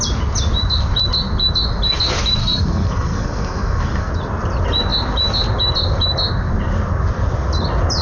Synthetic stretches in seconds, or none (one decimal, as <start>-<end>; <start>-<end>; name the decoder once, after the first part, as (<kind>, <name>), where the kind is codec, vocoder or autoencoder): 2.4-4.1 (codec, SNAC)